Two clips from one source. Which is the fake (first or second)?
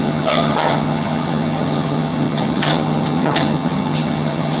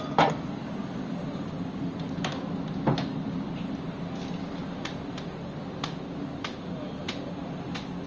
first